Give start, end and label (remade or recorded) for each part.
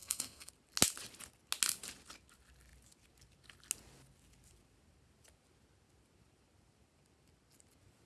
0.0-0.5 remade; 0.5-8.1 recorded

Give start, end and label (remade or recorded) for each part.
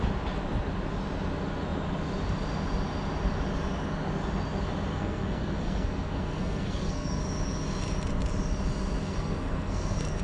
0.0-4.9 recorded; 4.9-7.2 remade; 7.2-9.0 recorded; 9.0-10.2 remade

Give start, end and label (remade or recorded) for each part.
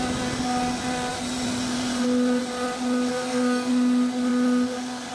0.0-3.1 recorded; 3.1-3.7 remade; 3.7-5.1 recorded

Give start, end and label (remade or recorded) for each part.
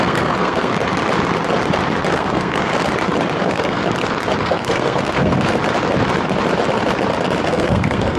0.0-0.7 remade; 0.7-2.1 recorded; 2.1-2.7 remade; 2.7-3.4 recorded; 3.4-3.8 remade; 3.8-4.4 recorded; 4.4-5.6 remade; 5.6-7.5 recorded; 7.5-8.2 remade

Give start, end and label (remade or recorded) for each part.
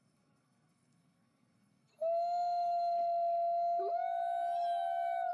0.0-1.9 remade; 1.9-5.3 recorded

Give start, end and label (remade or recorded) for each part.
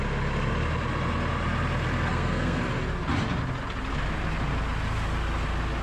0.0-2.1 recorded; 2.1-2.6 remade; 2.6-5.8 recorded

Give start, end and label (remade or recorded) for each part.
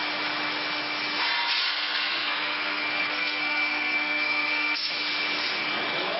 0.0-1.7 recorded; 1.7-4.9 remade; 4.9-6.2 recorded